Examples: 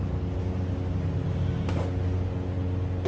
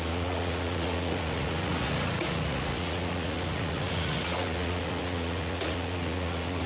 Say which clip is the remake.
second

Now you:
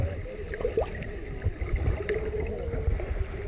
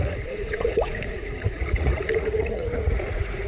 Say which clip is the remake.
second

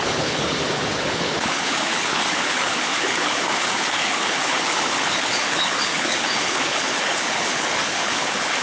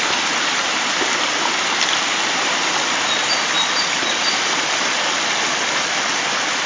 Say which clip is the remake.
first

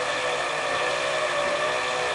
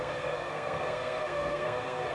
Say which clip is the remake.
second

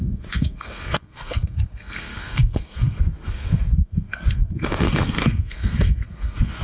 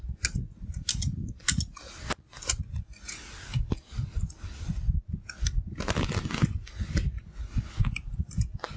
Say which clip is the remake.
first